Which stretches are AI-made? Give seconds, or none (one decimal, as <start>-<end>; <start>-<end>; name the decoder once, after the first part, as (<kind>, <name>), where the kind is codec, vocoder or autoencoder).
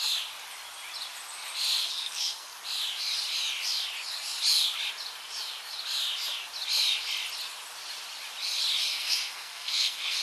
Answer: 1.8-2.6 (codec, SNAC); 8.9-10.2